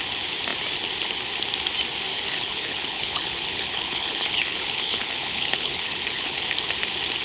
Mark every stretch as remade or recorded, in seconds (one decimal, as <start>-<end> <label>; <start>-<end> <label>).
0.0-2.1 recorded; 2.1-6.4 remade; 6.4-7.2 recorded